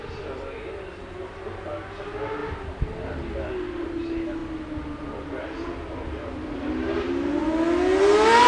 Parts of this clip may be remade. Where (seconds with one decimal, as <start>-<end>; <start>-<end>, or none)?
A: none